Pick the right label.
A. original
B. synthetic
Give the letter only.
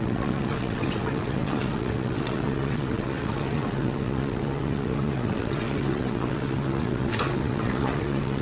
B